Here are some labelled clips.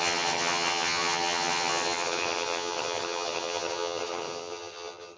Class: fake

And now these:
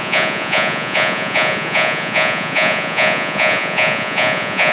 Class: fake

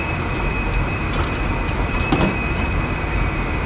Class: real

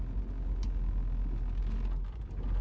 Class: real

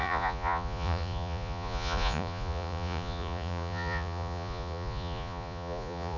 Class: fake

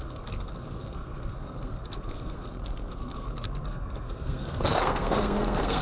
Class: fake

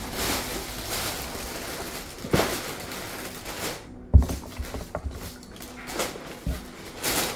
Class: real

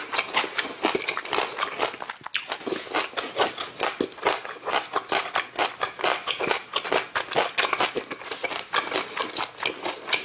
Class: real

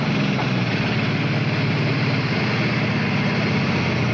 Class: real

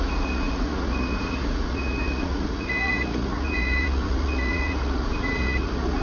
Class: fake